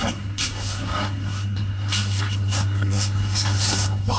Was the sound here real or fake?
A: fake